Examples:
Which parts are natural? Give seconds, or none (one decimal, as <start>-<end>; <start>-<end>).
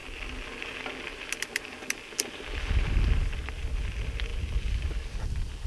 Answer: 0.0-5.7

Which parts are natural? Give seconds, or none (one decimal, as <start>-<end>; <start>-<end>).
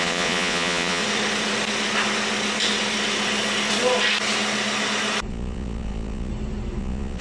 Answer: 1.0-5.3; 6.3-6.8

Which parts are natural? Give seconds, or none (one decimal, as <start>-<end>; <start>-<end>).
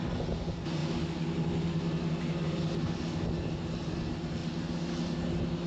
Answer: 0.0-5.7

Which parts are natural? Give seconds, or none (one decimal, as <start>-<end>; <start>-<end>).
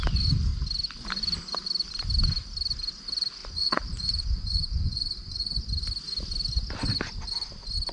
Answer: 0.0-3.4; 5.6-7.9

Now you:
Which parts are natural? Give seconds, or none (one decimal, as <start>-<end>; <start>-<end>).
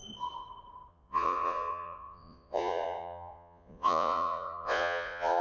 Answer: 0.0-0.9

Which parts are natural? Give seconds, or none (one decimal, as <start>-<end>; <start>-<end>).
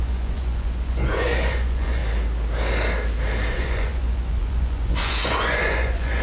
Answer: 2.0-3.5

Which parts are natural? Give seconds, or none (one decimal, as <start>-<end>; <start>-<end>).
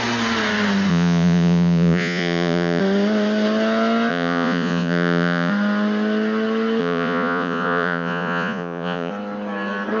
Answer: 0.0-0.9; 2.8-4.1; 5.5-6.8; 9.1-10.0